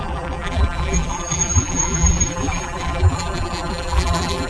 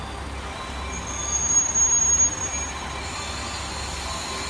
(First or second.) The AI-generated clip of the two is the first